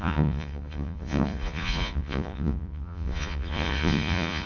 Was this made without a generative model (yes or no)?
no